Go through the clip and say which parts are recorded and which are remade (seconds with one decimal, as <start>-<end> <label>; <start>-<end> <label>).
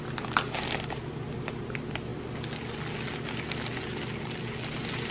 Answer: 0.0-5.1 recorded